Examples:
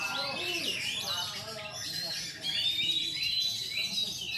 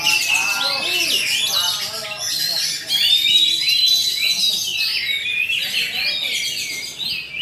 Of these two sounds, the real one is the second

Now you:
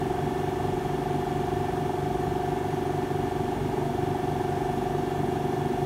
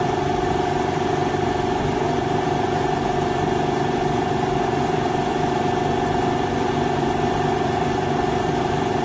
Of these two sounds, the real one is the first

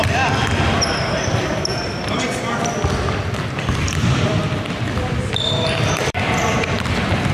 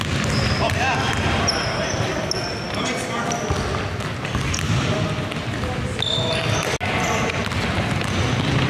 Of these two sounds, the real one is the second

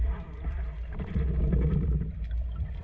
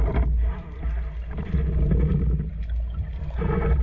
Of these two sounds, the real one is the second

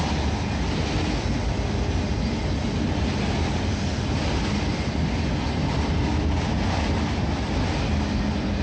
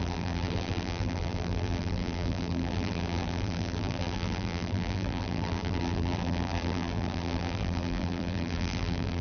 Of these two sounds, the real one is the first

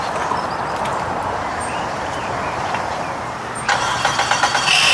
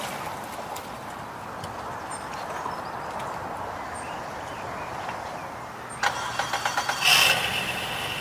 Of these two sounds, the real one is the second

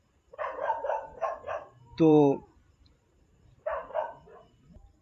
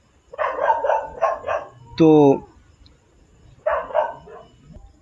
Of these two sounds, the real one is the second